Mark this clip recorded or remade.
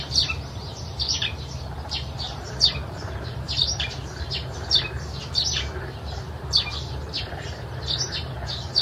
remade